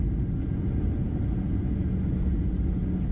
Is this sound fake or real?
real